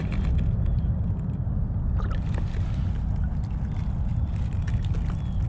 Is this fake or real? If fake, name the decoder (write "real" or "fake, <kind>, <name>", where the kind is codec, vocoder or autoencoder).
real